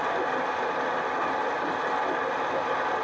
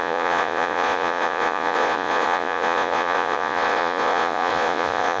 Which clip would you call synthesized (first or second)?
second